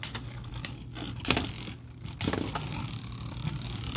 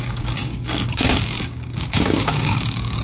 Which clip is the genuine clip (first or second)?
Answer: first